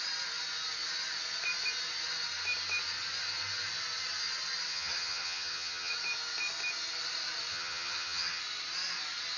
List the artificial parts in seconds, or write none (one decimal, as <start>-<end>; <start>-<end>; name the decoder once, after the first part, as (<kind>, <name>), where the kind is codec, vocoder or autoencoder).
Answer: 4.7-5.9 (vocoder, HiFi-GAN); 7.5-8.4